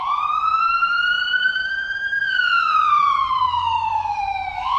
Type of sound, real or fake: fake